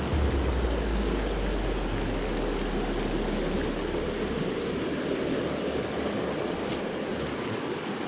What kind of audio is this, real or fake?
real